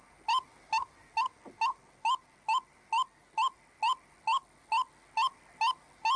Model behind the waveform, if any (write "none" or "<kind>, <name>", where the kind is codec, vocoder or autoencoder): none